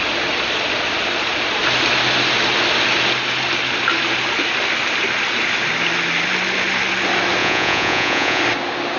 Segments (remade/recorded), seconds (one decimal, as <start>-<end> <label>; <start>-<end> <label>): 0.0-7.4 recorded; 7.4-8.4 remade; 8.4-9.0 recorded